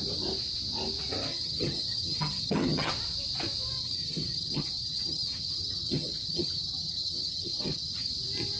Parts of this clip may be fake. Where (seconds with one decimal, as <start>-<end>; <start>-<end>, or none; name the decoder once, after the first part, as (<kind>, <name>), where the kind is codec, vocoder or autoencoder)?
1.3-2.9 (vocoder, HiFi-GAN); 3.8-8.1